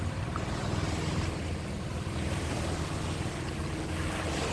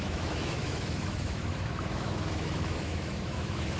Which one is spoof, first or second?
second